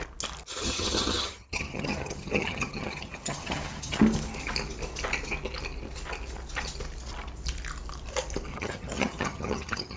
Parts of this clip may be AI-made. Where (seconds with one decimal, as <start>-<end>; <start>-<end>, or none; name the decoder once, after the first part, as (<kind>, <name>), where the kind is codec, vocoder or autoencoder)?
0.6-4.0 (vocoder, HiFi-GAN); 8.5-10.0